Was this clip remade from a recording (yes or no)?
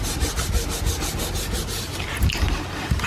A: no